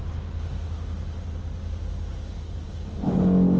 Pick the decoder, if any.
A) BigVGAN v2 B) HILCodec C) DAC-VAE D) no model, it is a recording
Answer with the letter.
D